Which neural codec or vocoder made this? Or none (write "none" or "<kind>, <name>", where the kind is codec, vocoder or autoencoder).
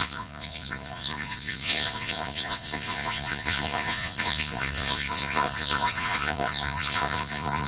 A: vocoder, Vocos